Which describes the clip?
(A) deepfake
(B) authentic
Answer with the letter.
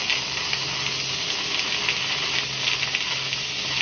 B